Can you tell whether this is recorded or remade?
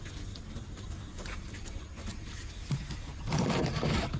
recorded